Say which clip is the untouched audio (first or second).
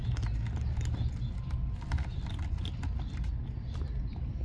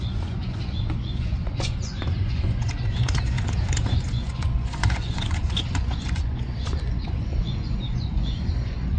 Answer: first